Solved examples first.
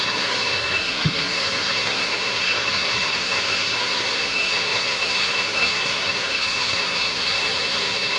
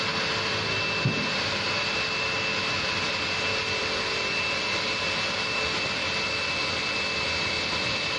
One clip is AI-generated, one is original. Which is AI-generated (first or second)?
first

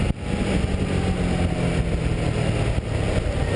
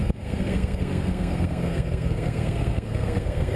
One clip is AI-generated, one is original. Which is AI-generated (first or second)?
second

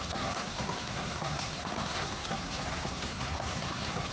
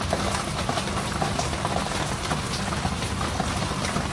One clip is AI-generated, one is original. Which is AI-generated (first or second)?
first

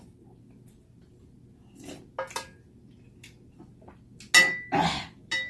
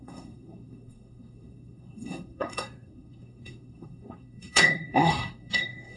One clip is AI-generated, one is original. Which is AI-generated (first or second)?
second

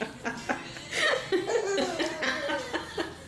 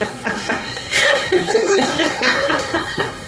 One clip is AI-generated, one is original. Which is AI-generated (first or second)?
second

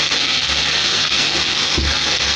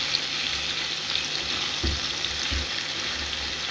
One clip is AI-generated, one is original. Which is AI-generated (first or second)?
first